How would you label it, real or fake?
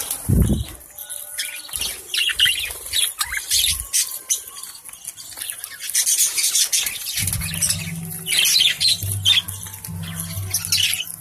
real